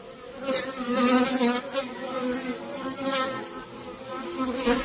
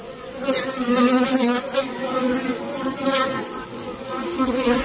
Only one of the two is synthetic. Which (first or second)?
second